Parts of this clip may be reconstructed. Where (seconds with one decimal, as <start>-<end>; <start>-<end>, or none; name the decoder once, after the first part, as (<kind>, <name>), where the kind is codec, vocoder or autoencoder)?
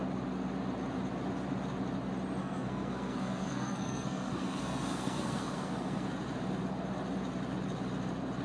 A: 2.4-6.1 (codec, SNAC)